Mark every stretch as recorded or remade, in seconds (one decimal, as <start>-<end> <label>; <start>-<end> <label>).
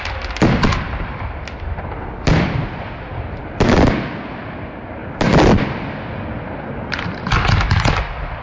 0.0-8.4 recorded